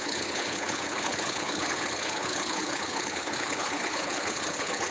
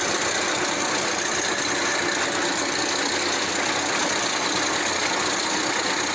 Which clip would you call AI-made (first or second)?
first